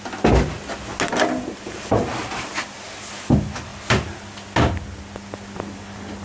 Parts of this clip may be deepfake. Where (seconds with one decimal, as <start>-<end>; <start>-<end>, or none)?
none